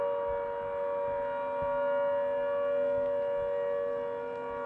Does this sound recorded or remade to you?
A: recorded